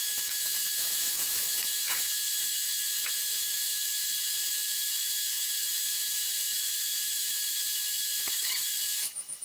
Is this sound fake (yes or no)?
yes